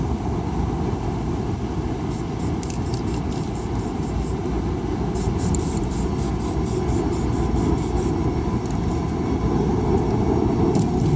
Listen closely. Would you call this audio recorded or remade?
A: recorded